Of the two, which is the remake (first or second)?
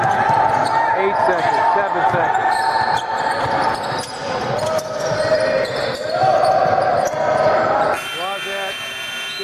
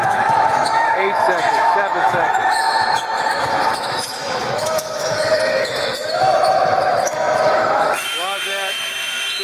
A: second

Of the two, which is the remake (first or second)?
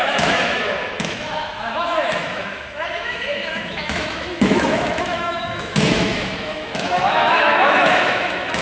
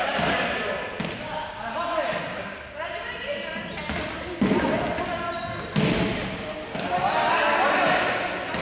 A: first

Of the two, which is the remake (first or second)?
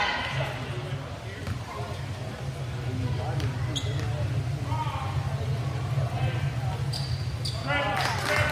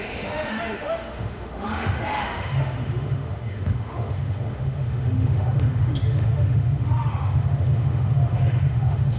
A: second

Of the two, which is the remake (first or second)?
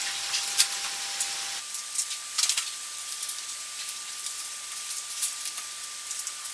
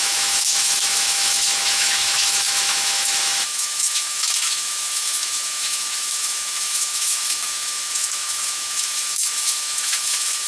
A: second